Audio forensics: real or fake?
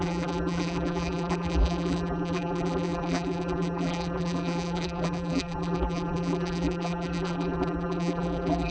fake